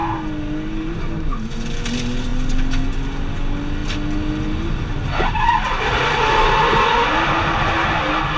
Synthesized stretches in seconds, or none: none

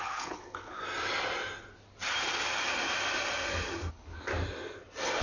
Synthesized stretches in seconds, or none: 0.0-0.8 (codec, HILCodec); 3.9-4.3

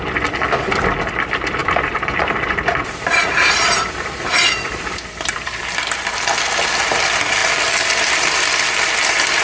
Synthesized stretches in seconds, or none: 1.6-5.6 (vocoder, BigVGAN v2)

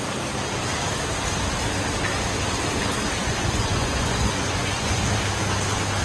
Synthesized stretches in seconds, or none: 3.2-5.0 (vocoder, Vocos)